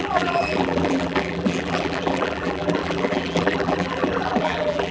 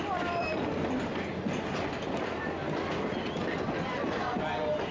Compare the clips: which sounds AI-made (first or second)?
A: first